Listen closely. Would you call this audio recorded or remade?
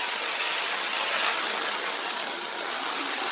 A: remade